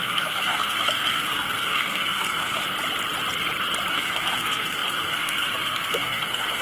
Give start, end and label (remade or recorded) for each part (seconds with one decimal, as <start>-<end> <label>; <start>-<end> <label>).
0.0-2.6 remade; 2.6-3.9 recorded; 3.9-6.6 remade